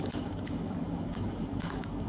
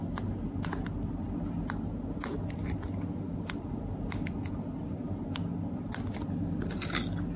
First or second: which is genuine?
second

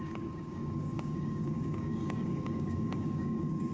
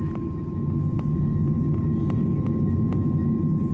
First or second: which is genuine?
second